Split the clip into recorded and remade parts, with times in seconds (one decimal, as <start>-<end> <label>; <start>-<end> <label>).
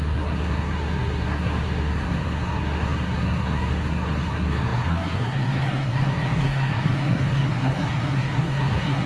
0.0-9.1 remade